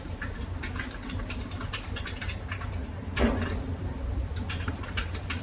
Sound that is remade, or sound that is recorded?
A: remade